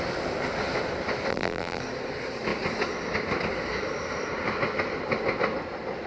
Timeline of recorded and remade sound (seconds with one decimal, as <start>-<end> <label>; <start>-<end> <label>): 0.0-1.3 recorded; 1.3-1.8 remade; 1.8-6.1 recorded